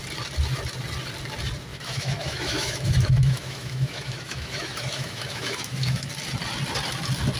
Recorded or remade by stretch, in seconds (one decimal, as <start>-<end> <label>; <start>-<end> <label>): 0.0-1.7 recorded; 1.7-6.1 remade; 6.1-7.4 recorded